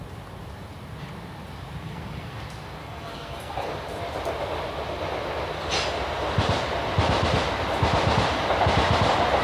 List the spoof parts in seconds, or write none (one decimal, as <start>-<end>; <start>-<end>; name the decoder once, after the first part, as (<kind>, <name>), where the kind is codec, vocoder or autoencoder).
1.8-2.4 (codec, SNAC); 2.8-3.7